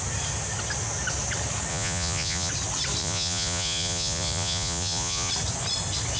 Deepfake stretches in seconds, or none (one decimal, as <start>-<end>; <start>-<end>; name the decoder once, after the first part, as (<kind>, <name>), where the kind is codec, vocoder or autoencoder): 1.7-2.5 (vocoder, Vocos); 3.0-5.3